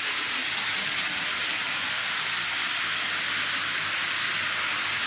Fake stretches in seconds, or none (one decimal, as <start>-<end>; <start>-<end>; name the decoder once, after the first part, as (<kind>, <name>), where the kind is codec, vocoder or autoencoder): 0.4-1.2 (vocoder, HiFi-GAN)